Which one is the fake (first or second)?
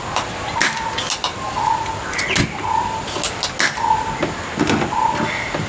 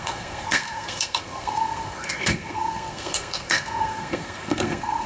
second